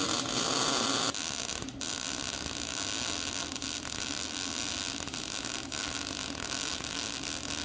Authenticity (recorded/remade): recorded